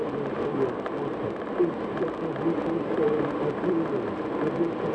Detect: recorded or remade recorded